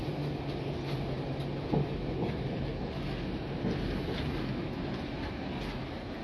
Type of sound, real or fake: real